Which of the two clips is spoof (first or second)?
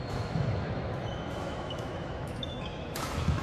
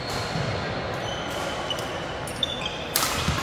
first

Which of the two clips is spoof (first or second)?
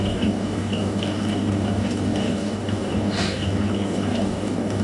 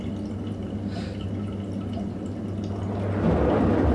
first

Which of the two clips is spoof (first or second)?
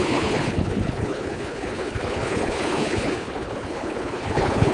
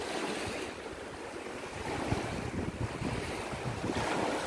first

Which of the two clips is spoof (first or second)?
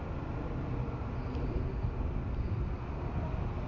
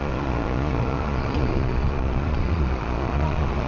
second